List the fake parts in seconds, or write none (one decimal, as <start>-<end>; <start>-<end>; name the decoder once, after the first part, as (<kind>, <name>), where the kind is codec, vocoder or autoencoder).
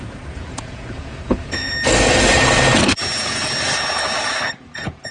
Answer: 0.0-1.7 (vocoder, Vocos)